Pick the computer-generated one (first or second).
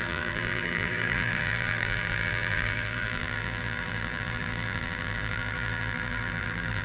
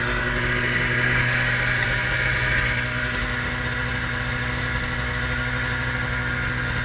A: first